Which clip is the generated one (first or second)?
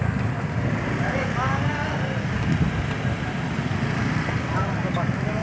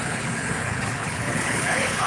second